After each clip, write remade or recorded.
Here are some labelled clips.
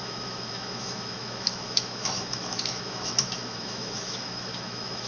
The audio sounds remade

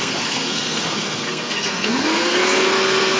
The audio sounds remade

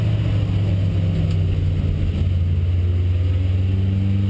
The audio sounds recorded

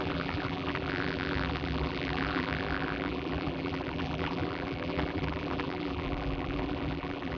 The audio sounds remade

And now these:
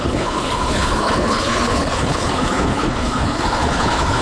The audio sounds remade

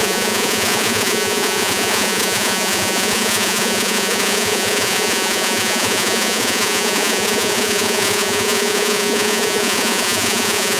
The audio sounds remade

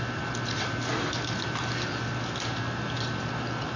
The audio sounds recorded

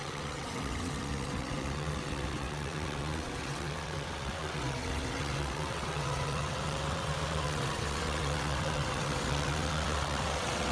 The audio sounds remade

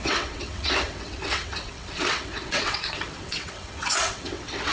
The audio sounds remade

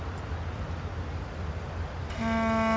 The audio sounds recorded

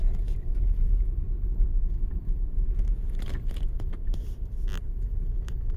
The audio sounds recorded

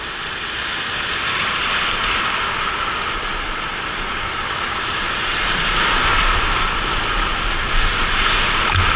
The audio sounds recorded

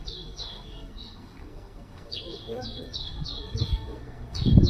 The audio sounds remade